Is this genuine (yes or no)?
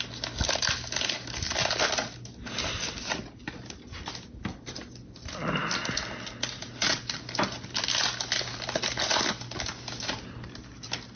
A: yes